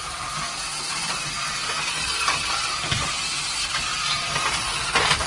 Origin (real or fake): real